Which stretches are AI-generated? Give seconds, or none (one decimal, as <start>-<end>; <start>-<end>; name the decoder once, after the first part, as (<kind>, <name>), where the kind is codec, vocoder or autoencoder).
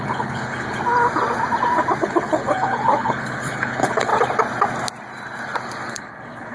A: 0.0-0.8 (codec, HILCodec); 2.0-4.1; 5.9-6.5